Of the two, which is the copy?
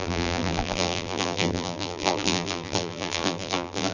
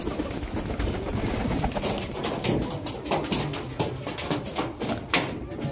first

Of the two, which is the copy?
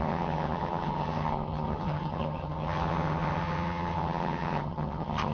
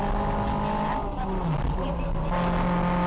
first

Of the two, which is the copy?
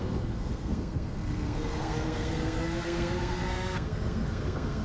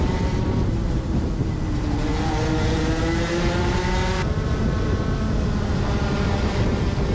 first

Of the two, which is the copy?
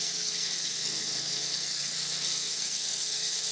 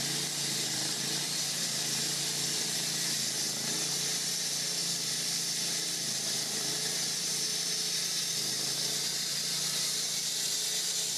first